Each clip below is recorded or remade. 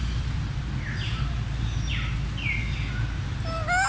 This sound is recorded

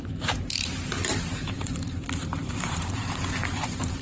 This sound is remade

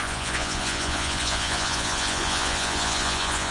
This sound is remade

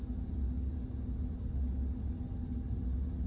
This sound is recorded